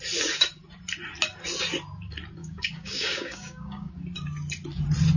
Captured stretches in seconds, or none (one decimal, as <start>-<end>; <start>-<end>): 0.0-2.4; 3.9-5.2